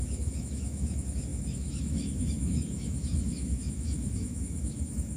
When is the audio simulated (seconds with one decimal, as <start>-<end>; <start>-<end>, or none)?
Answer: 0.0-5.2